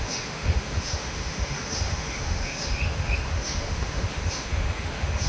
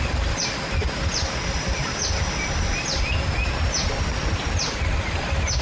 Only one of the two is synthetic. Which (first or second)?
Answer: first